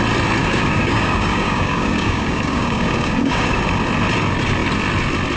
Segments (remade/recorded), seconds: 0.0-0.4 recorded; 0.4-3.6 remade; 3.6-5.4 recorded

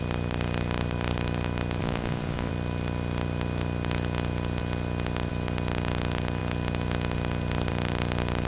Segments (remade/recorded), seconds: 0.0-1.8 recorded; 1.8-2.5 remade; 2.5-8.5 recorded

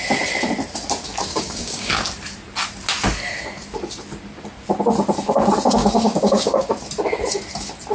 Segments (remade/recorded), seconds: 0.0-1.3 recorded; 1.3-1.9 remade; 1.9-5.8 recorded; 5.8-6.7 remade; 6.7-7.9 recorded

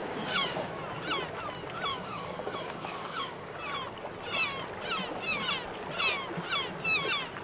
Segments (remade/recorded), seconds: 0.0-0.7 remade; 0.7-1.9 recorded; 1.9-3.6 remade; 3.6-7.4 recorded

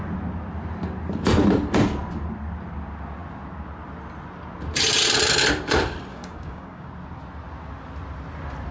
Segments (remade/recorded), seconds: 0.0-6.1 recorded; 6.1-6.9 remade; 6.9-8.7 recorded